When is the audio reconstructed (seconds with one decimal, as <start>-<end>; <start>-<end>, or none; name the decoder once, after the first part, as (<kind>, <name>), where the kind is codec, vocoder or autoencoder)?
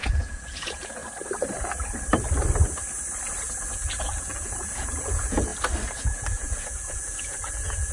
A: 0.0-1.0 (vocoder, Vocos); 3.4-5.5; 6.0-7.9